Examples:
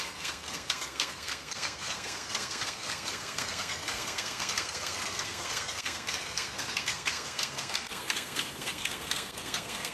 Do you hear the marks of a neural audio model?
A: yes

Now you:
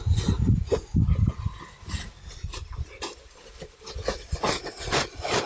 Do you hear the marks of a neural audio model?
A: no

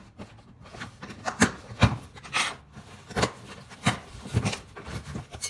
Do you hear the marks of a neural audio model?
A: no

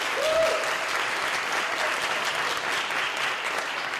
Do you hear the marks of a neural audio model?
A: no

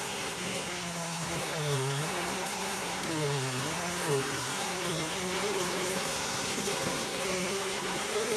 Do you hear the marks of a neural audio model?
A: yes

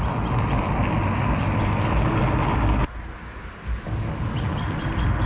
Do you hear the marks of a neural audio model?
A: no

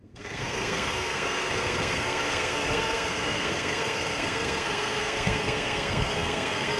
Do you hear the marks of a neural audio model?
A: yes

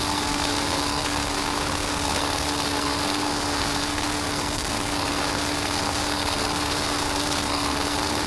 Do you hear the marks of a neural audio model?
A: yes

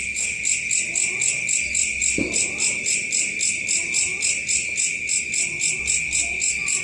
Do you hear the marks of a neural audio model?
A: no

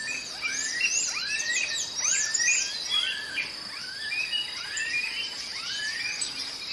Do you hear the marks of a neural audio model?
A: no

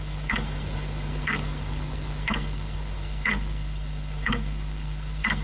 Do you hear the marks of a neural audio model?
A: yes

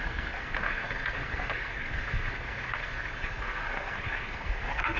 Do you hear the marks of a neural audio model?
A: yes